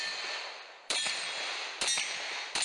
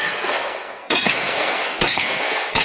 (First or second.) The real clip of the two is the first